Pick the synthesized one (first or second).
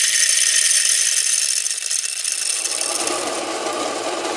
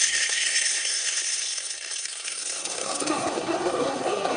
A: second